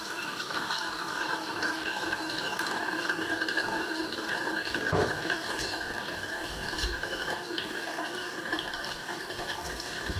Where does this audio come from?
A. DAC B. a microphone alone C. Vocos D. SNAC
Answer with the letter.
A